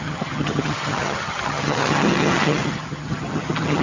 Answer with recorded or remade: remade